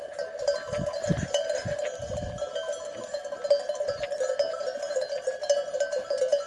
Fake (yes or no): no